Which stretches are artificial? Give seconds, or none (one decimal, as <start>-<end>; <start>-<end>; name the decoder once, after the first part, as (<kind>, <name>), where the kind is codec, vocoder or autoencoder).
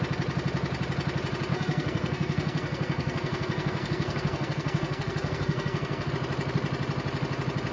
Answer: 1.5-6.1 (codec, SNAC)